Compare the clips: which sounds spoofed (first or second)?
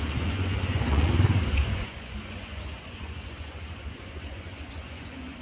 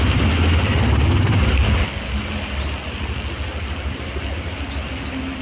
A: first